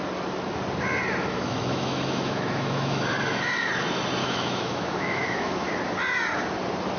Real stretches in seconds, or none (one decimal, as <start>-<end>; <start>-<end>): 0.0-1.2; 3.0-4.2; 5.7-7.0